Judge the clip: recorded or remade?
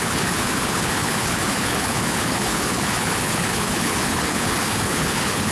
remade